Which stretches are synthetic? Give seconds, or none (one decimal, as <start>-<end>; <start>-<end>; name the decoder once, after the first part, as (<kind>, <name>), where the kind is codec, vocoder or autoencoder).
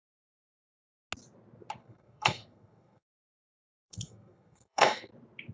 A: 1.8-5.1 (codec, SNAC)